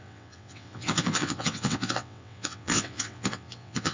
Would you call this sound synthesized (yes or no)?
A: yes